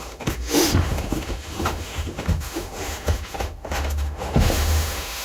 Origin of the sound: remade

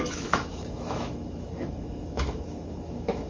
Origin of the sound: remade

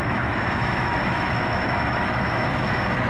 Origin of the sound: remade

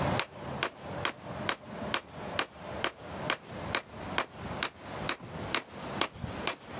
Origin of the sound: recorded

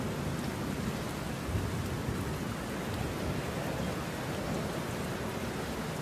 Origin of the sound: recorded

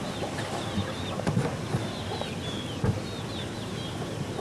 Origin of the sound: recorded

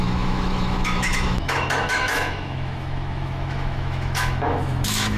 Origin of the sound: remade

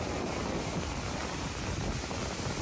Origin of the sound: recorded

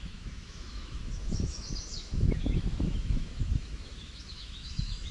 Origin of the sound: remade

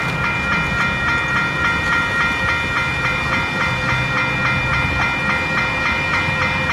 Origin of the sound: recorded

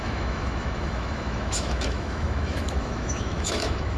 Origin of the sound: remade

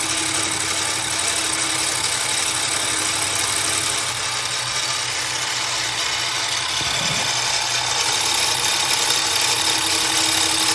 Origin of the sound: recorded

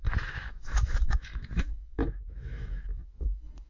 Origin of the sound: remade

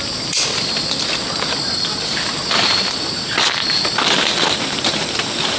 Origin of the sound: recorded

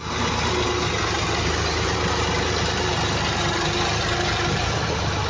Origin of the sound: recorded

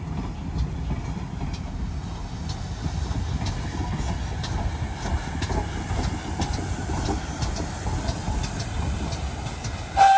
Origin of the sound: recorded